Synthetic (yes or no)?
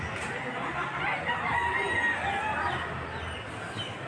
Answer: no